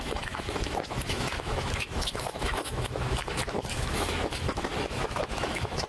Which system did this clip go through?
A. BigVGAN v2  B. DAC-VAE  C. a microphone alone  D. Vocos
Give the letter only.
B